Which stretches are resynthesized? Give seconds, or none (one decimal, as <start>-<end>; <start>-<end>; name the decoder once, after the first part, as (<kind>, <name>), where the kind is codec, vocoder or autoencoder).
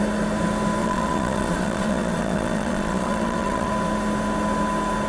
0.8-3.7 (vocoder, Vocos)